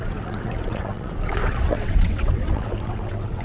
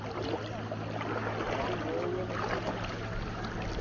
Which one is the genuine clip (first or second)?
second